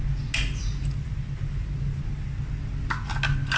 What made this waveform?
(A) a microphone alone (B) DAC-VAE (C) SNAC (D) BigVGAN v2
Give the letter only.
A